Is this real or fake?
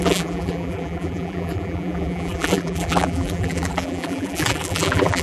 fake